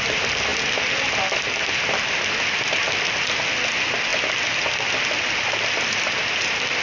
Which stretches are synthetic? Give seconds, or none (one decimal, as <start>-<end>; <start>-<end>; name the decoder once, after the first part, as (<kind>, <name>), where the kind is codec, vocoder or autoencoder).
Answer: none